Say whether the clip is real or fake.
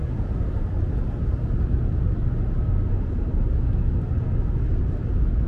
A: real